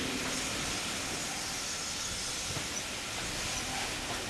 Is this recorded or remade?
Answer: recorded